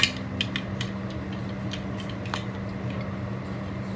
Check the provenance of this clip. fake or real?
real